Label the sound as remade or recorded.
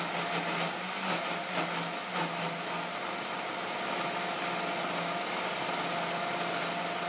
recorded